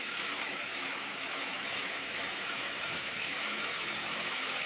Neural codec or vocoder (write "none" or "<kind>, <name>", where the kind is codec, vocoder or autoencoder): autoencoder, DAC-VAE